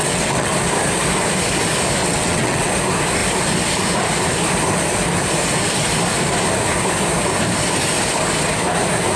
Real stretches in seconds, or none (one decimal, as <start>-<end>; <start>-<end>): 0.5-2.0; 2.7-9.2